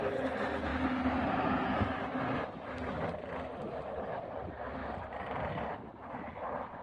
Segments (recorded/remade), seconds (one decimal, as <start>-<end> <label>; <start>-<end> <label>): 0.0-6.8 recorded